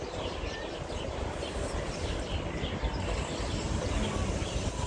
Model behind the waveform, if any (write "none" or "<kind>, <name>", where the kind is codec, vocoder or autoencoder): none